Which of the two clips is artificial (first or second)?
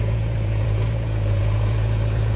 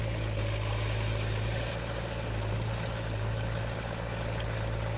first